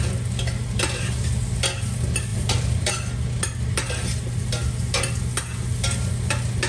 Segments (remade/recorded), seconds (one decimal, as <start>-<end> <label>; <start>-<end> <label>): 0.0-2.3 recorded; 2.3-2.9 remade; 2.9-6.7 recorded